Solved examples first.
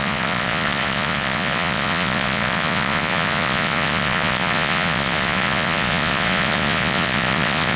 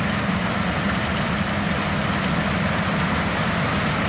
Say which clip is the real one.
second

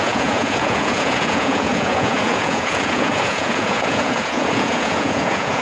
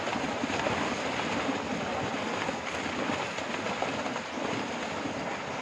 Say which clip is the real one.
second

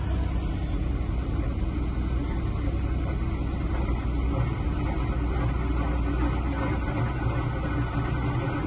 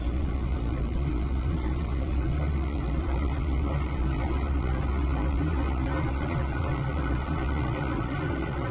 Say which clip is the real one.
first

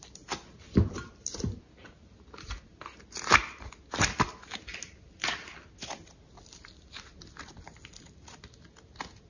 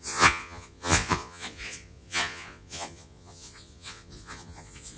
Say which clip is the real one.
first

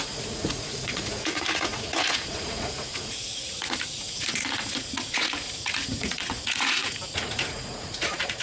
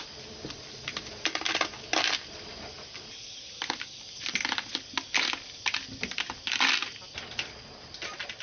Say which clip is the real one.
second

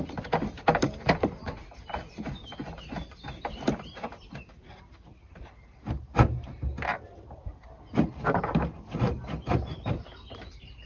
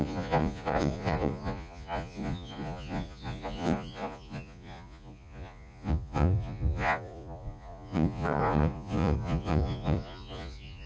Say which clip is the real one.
first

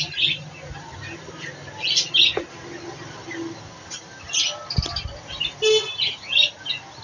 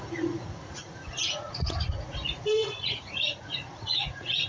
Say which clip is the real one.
first